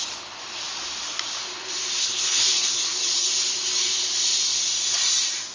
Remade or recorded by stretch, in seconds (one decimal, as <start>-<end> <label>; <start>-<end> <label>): 0.0-2.0 recorded; 2.0-3.3 remade; 3.3-5.5 recorded